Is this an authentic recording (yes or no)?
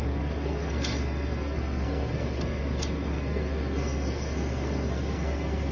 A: no